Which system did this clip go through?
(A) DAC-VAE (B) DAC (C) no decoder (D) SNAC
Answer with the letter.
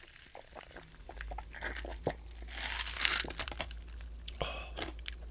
C